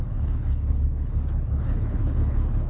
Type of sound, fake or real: fake